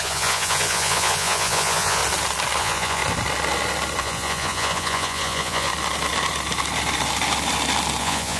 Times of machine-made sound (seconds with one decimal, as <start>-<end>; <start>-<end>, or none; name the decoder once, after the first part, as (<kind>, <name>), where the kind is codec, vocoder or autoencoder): 0.0-2.0 (vocoder, Vocos); 2.6-3.0; 4.0-5.7; 8.0-8.4